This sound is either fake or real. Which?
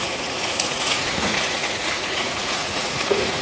fake